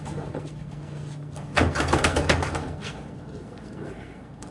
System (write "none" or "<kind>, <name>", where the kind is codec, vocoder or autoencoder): codec, SNAC